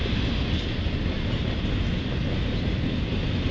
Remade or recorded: recorded